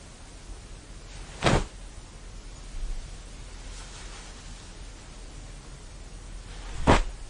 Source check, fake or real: real